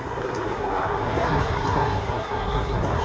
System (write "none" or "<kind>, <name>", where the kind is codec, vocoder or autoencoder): codec, SNAC